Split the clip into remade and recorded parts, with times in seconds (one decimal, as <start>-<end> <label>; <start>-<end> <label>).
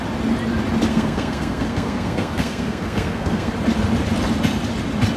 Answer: 0.0-0.9 recorded; 0.9-3.5 remade; 3.5-5.2 recorded